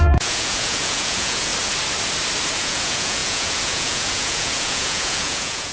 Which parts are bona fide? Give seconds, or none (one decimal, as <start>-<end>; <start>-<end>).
1.5-2.5